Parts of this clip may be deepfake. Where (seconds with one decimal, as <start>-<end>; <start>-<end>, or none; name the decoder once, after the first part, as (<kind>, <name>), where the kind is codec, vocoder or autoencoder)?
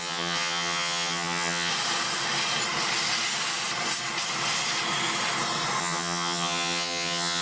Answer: 0.0-1.7 (vocoder, HiFi-GAN); 5.8-7.4